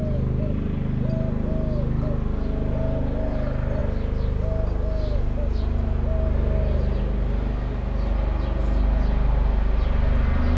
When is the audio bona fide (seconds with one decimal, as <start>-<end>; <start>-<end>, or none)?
0.0-10.6